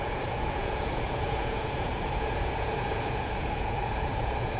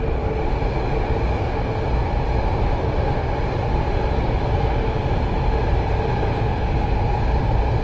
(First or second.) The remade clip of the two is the first